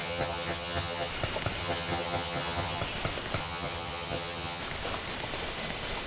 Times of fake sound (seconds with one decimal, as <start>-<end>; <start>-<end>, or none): 0.0-1.1; 1.6-2.8; 3.4-4.6